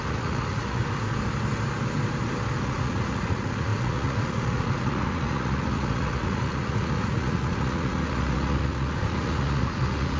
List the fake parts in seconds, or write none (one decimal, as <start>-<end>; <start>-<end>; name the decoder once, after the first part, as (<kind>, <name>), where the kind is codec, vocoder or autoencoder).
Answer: 0.0-0.8 (vocoder, Vocos); 2.6-10.2